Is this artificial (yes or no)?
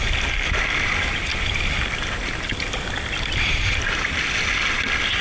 no